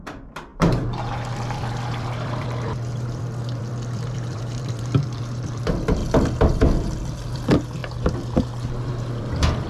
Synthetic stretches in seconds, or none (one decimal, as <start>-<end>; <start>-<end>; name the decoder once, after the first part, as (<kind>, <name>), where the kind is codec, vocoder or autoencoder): 0.0-6.0 (vocoder, BigVGAN v2); 6.6-7.8; 8.9-9.7